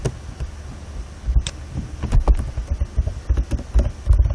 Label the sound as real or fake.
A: real